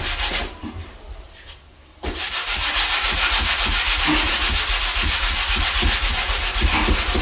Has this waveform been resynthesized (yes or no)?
no